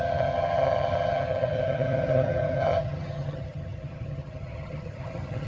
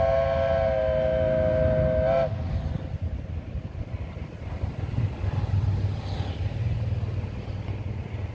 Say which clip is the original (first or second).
second